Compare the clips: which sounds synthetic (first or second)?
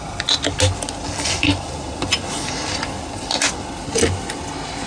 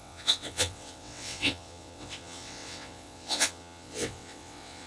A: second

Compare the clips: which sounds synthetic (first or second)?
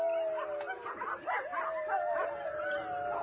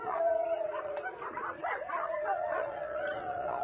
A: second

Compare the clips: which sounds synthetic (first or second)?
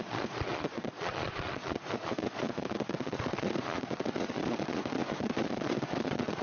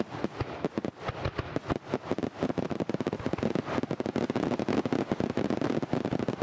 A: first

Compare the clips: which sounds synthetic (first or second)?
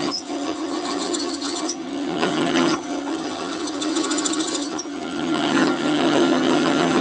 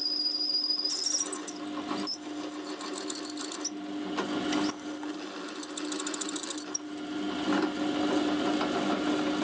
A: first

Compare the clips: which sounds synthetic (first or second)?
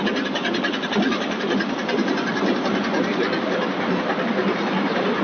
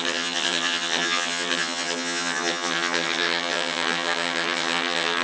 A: second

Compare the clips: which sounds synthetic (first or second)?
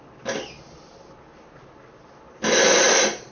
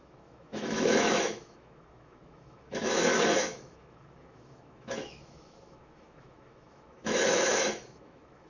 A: second